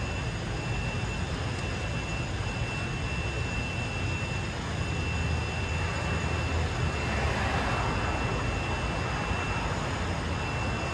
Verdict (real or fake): real